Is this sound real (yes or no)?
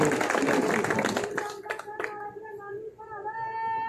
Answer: yes